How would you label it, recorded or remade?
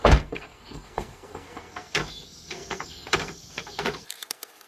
remade